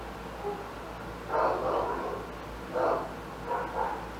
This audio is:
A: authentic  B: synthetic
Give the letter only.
A